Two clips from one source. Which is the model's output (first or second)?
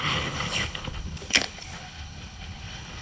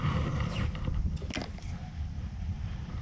first